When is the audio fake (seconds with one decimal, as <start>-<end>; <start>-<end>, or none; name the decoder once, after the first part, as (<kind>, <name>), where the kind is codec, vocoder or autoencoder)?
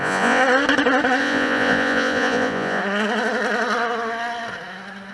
0.0-0.4 (vocoder, Vocos); 1.2-2.8